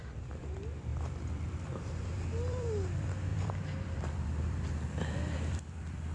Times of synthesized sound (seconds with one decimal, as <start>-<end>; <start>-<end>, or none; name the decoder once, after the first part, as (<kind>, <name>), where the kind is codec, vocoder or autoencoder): 0.0-6.1 (vocoder, BigVGAN v2)